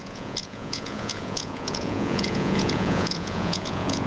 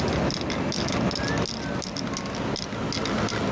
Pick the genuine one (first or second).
second